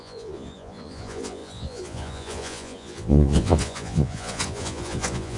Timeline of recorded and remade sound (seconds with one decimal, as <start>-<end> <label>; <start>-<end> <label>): 0.0-5.4 remade